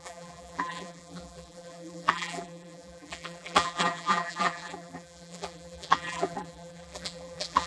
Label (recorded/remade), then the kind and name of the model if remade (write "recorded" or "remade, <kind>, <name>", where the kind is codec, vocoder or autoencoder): remade, vocoder, BigVGAN v2